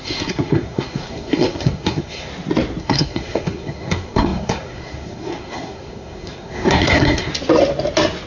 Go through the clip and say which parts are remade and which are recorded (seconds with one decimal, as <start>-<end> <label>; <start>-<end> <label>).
0.0-2.3 remade; 2.3-2.8 recorded; 2.8-7.3 remade; 7.3-8.3 recorded